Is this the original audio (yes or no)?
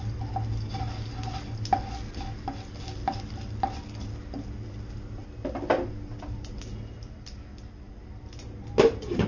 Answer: yes